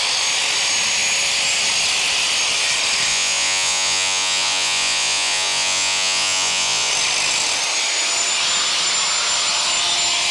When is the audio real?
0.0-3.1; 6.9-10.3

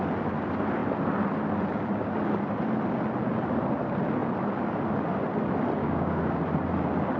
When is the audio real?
0.0-5.8; 6.4-7.2

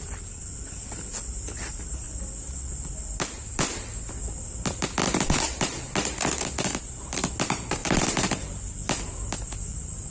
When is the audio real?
0.0-10.1

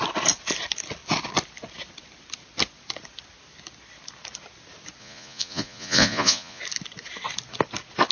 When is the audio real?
0.0-5.0; 6.6-8.1

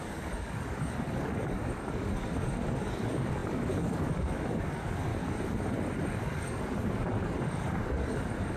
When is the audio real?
5.1-6.0

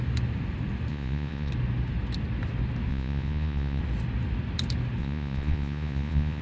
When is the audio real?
0.0-0.9; 1.5-2.9; 3.8-5.0

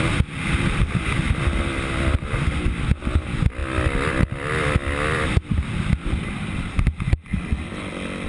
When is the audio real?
0.0-8.3